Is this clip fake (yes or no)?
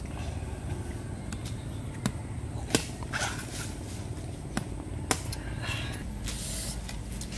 no